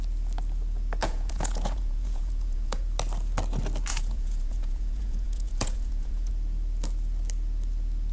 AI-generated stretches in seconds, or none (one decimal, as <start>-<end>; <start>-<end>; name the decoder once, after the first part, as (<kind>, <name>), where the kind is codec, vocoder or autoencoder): 1.0-2.8 (vocoder, Vocos); 3.9-6.3

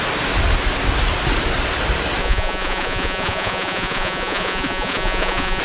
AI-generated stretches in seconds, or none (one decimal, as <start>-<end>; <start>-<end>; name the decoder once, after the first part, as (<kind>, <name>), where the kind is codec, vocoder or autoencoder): 2.2-5.6 (vocoder, Vocos)

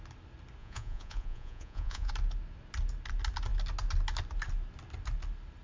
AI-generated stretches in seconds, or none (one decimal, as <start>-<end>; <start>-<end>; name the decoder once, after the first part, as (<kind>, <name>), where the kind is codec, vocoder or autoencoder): 0.6-2.1 (vocoder, Vocos)

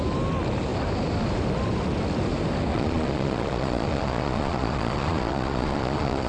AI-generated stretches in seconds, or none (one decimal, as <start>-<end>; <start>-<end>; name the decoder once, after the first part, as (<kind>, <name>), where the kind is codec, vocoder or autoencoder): 2.7-6.3 (vocoder, Vocos)

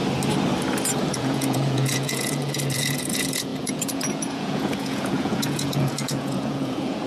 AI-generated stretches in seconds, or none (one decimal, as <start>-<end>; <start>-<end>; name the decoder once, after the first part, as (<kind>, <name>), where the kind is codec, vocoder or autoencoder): 1.1-7.1 (vocoder, Vocos)

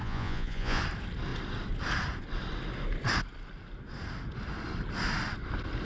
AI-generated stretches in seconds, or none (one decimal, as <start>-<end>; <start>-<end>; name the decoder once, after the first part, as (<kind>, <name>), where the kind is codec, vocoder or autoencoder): 0.0-0.8 (vocoder, Vocos)